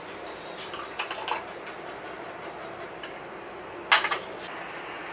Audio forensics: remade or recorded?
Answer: recorded